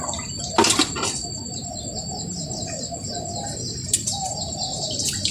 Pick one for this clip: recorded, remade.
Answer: recorded